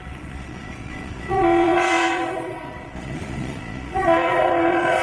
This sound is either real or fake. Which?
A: fake